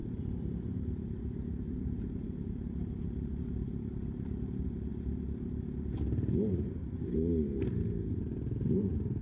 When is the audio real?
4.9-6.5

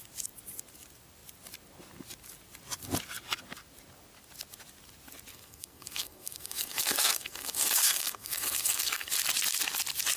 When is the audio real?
0.0-5.3; 9.1-10.2